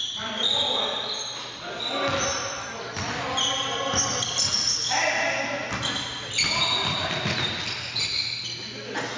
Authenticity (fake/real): real